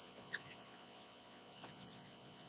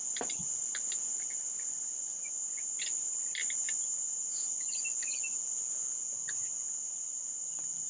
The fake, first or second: first